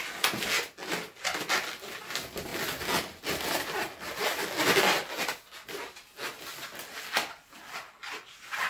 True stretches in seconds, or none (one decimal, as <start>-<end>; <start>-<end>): 0.0-8.7